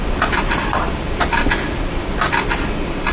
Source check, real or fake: real